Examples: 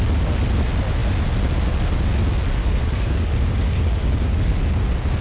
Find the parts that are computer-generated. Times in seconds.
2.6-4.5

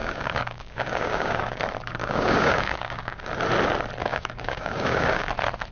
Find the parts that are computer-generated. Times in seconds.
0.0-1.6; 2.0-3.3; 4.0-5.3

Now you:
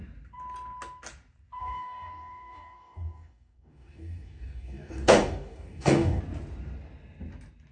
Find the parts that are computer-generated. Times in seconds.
1.6-6.2